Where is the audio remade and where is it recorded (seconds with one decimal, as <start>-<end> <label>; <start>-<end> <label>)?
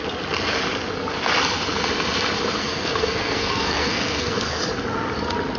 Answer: 0.0-2.6 recorded; 2.6-4.6 remade; 4.6-5.6 recorded